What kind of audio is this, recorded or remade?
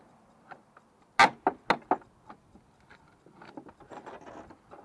recorded